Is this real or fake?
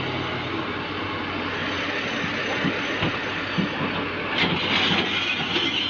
real